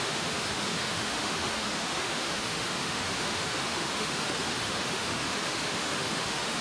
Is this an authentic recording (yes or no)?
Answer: no